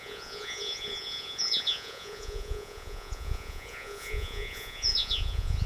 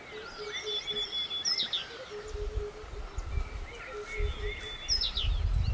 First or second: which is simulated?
first